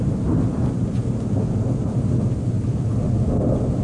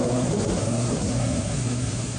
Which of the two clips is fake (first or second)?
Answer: second